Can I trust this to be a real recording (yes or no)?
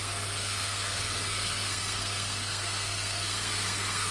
no